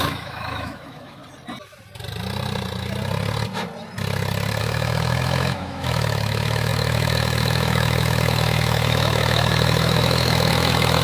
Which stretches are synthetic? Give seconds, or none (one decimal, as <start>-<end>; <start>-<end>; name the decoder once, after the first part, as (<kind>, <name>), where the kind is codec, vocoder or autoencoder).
0.0-1.2 (autoencoder, DAC-VAE); 4.6-11.0